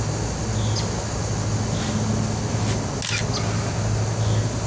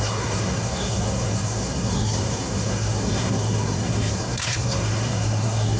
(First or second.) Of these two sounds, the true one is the first